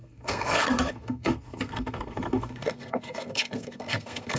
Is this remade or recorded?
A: remade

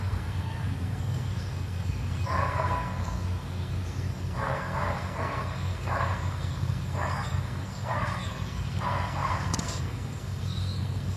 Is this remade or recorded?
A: remade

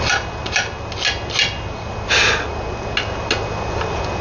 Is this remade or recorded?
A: recorded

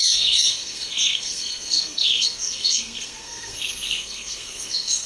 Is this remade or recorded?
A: remade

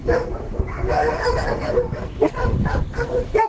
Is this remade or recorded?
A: remade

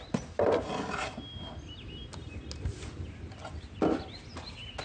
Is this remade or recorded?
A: recorded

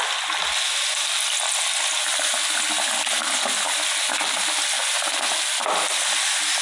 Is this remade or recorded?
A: recorded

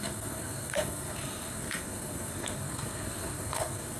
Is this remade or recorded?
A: remade